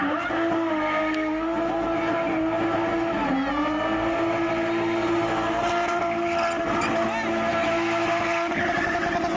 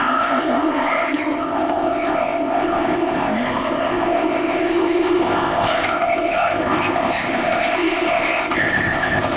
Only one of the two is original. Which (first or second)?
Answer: first